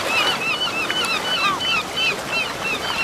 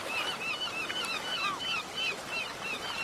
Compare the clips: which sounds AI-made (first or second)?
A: second